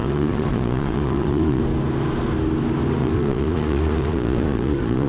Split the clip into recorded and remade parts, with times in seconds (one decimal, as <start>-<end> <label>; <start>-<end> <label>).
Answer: 0.0-1.6 remade; 1.6-3.0 recorded; 3.0-5.1 remade